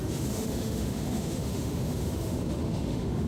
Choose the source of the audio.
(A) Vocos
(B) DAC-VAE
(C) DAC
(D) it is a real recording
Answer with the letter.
B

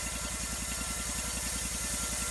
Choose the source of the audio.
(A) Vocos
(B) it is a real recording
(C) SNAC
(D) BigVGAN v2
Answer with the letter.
B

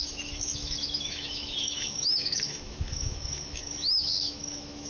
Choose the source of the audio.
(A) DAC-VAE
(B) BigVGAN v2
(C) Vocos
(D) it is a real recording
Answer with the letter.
A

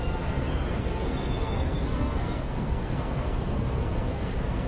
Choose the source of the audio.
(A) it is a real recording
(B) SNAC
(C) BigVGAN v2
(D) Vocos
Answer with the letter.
B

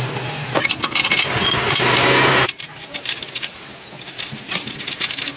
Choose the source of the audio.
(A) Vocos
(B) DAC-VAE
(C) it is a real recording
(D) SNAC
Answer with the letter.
C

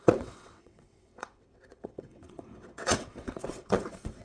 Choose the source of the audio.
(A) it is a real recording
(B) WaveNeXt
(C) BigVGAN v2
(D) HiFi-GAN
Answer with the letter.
B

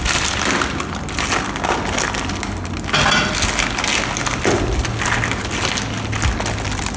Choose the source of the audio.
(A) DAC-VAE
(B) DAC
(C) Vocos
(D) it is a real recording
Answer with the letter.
D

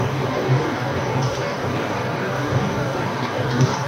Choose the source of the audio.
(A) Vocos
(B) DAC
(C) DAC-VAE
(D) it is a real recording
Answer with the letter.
B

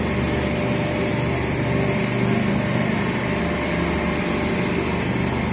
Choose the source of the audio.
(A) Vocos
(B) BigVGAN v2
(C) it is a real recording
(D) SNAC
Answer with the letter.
C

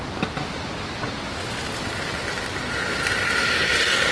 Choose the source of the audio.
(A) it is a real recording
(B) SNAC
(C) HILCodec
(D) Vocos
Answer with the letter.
A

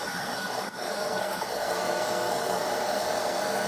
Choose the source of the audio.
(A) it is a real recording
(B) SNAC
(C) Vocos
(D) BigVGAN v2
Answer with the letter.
B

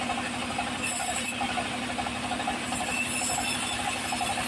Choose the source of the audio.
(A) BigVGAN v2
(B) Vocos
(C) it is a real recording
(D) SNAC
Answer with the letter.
C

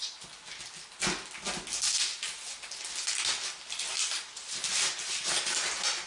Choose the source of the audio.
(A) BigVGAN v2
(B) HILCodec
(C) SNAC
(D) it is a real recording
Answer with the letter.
D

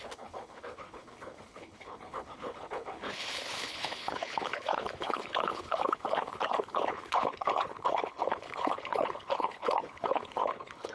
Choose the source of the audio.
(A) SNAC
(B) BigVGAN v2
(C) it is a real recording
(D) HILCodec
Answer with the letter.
D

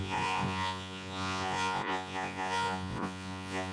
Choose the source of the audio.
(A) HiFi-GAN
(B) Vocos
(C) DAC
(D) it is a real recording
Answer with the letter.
B